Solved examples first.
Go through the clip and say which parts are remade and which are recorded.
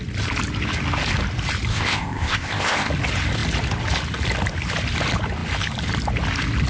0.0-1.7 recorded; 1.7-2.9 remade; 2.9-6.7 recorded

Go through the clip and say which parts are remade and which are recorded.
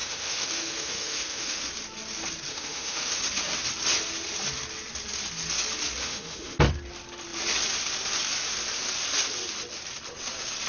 0.0-1.6 remade; 1.6-2.5 recorded; 2.5-3.2 remade; 3.2-6.0 recorded; 6.0-6.6 remade; 6.6-10.7 recorded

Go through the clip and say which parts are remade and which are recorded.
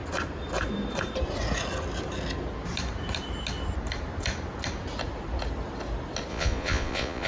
0.0-6.3 recorded; 6.3-7.3 remade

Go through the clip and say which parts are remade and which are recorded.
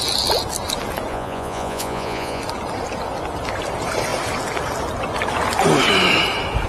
0.0-1.1 recorded; 1.1-2.4 remade; 2.4-6.7 recorded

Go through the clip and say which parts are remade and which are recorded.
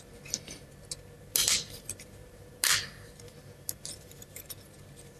0.0-1.3 recorded; 1.3-4.4 remade; 4.4-5.2 recorded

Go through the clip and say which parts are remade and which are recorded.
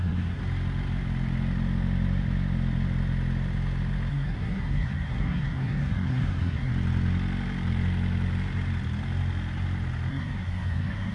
0.0-0.4 remade; 0.4-4.1 recorded; 4.1-6.7 remade; 6.7-10.1 recorded; 10.1-11.1 remade